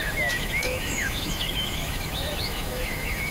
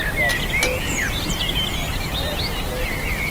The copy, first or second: first